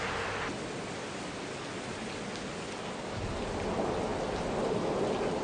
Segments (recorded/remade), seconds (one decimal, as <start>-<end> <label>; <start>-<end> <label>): 0.0-5.4 recorded